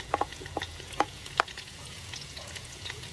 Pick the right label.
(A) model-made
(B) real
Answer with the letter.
A